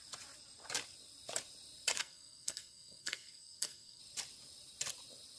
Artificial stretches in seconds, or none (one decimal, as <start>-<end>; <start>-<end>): 2.0-4.0